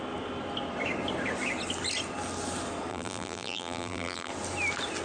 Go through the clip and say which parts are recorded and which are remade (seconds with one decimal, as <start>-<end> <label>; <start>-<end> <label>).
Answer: 0.0-2.9 recorded; 2.9-4.3 remade; 4.3-5.0 recorded